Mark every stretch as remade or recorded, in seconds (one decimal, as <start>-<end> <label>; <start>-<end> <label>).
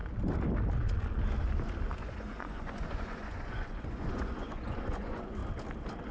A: 0.0-2.0 recorded; 2.0-5.4 remade; 5.4-6.1 recorded